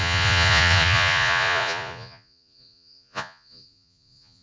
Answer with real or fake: fake